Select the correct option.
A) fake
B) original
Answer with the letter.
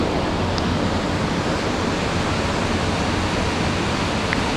B